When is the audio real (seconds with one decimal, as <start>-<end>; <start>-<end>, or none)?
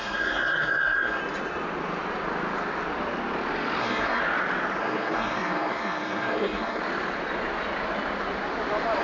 1.2-3.8; 4.2-4.8; 6.8-9.0